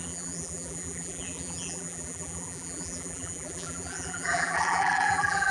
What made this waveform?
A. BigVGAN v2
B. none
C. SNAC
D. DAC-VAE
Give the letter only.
A